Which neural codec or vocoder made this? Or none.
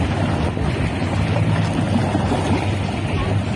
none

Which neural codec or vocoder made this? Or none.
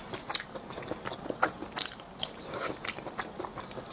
none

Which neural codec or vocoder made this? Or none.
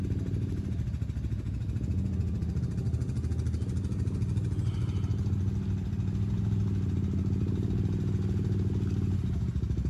none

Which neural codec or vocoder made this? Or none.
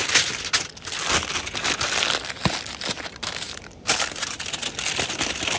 none